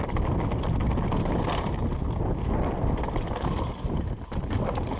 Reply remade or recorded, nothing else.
recorded